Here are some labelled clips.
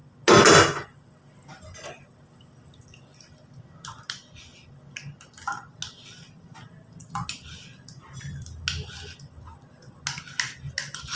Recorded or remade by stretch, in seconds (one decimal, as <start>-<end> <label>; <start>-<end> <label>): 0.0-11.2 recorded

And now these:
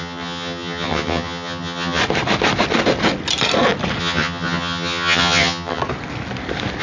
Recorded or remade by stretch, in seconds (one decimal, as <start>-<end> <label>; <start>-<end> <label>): 0.0-2.0 remade; 2.0-4.0 recorded; 4.0-5.8 remade; 5.8-6.8 recorded

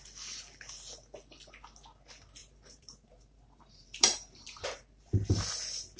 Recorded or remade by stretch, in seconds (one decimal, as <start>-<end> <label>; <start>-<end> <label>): 0.0-2.4 recorded; 2.4-5.1 remade; 5.1-6.0 recorded

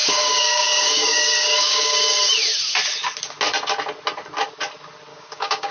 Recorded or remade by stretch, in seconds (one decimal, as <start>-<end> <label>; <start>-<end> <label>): 0.0-2.2 remade; 2.2-5.1 recorded; 5.1-5.7 remade

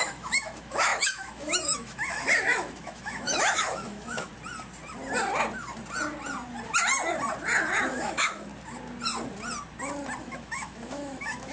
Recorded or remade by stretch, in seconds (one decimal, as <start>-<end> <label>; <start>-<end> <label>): 0.0-4.3 remade; 4.3-7.9 recorded; 7.9-8.5 remade; 8.5-10.2 recorded; 10.2-11.5 remade

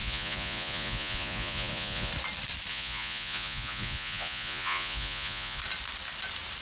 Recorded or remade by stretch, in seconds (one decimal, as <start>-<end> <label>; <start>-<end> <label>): 0.0-2.1 remade; 2.1-2.7 recorded; 2.7-5.6 remade; 5.6-6.6 recorded

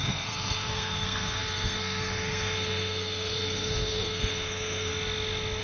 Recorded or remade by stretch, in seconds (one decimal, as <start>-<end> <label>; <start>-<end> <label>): 0.0-4.9 remade; 4.9-5.6 recorded